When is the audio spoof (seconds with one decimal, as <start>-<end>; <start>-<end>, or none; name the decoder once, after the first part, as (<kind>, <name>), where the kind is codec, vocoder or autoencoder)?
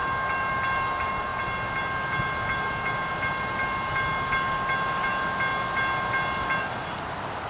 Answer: none